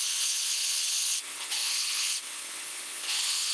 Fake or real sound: fake